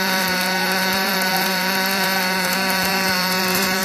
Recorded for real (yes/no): no